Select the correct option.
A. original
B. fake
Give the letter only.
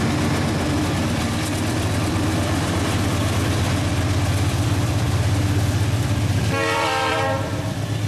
B